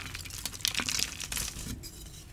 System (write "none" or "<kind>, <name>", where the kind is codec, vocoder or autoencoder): none